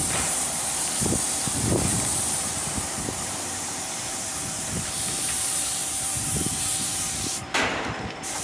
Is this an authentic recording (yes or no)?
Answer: no